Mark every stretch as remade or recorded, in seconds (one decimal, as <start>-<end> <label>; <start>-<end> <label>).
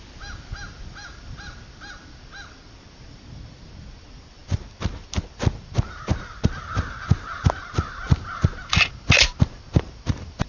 0.0-10.5 recorded